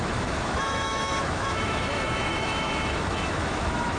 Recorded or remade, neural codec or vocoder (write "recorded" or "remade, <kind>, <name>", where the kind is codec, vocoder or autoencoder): remade, autoencoder, DAC-VAE